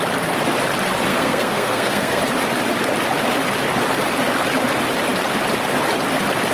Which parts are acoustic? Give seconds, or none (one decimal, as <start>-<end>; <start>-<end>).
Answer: 0.0-1.1; 2.2-6.5